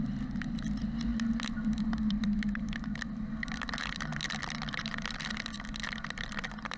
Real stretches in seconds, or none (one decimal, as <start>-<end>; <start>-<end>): none